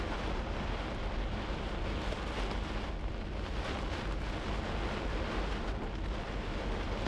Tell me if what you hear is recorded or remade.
recorded